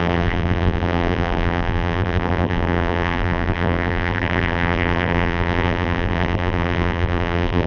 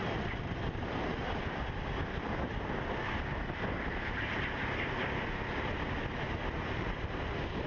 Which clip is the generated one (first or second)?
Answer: first